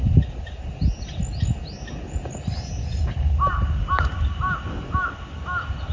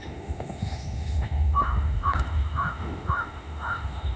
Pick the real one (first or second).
first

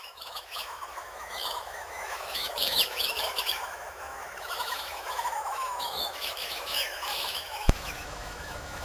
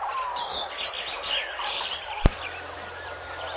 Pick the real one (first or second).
second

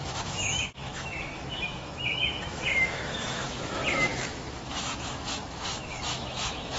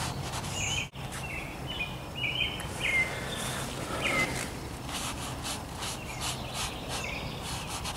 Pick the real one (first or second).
second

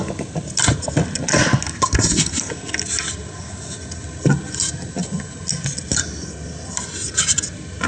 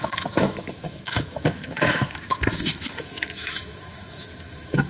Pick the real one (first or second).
first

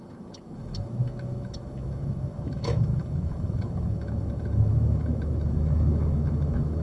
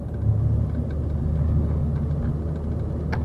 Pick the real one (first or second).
second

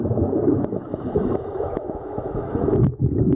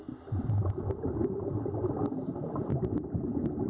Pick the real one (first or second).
second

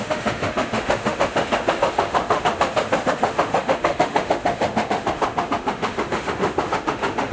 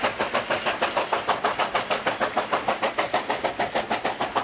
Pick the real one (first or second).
second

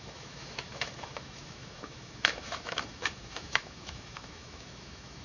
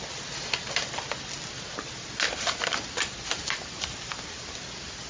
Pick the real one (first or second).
second